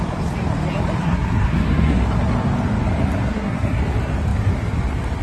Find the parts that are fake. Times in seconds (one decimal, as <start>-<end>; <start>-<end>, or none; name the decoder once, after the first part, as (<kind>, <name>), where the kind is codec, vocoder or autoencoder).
1.0-2.0 (codec, SNAC); 3.3-3.8